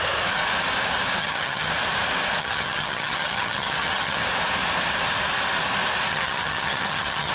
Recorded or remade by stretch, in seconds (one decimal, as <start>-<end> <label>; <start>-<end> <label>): 0.0-1.2 recorded; 1.2-1.7 remade; 1.7-2.4 recorded; 2.4-4.2 remade; 4.2-6.1 recorded; 6.1-7.3 remade